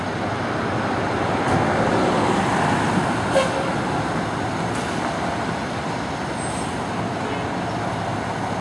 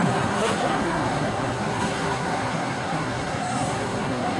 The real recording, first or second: first